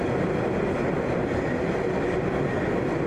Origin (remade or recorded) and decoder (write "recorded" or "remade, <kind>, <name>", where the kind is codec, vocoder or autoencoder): recorded